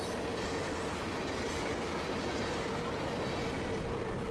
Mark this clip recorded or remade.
recorded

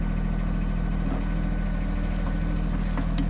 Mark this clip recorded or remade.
recorded